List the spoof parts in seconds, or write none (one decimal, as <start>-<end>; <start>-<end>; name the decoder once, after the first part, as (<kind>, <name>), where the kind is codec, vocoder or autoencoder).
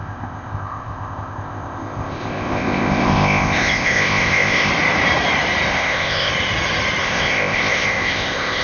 0.0-4.7 (codec, ZipCodec); 5.7-6.3; 7.0-8.6